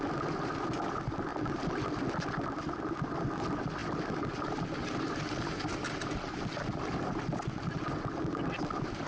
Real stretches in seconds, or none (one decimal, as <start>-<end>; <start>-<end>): 0.0-9.1